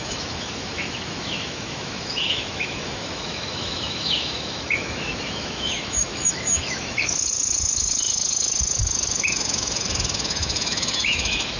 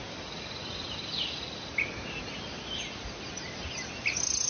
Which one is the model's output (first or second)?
first